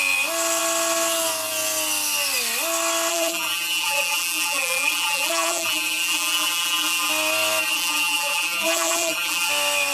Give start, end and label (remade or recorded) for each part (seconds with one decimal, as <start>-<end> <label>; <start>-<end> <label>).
0.0-3.1 recorded; 3.1-7.1 remade; 7.1-7.6 recorded; 7.6-9.5 remade; 9.5-9.9 recorded